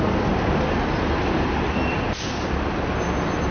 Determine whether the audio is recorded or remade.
recorded